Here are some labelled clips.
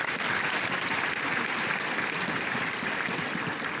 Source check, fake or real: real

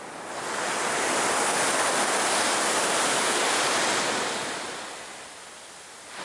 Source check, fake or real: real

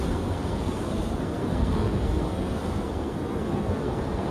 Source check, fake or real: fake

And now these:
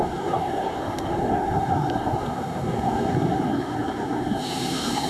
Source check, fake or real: fake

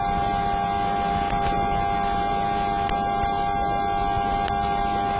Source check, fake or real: real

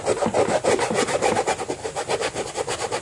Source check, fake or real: real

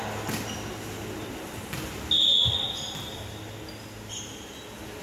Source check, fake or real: real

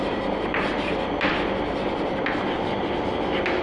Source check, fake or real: real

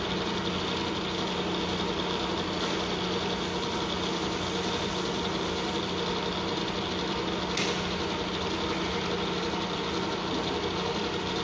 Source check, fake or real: real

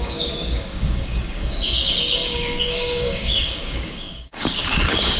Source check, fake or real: fake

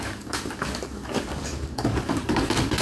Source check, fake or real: fake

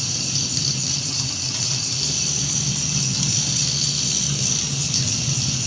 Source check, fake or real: real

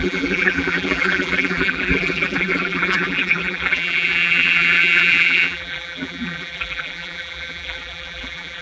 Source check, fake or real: fake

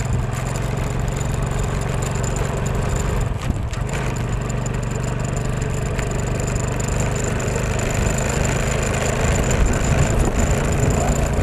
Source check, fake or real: real